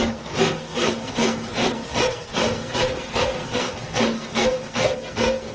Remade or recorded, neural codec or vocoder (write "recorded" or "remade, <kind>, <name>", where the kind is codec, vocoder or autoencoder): remade, codec, SNAC